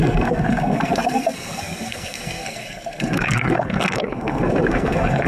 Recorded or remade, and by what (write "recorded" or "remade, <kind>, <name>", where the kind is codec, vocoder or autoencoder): remade, codec, SNAC